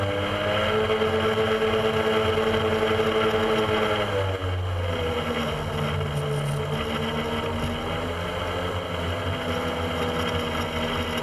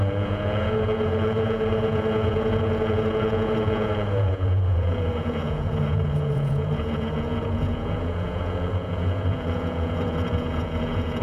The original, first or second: first